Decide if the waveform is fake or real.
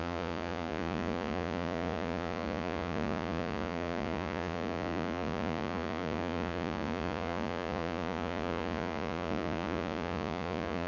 fake